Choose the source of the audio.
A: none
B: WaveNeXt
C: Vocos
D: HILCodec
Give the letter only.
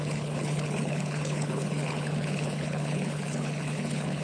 D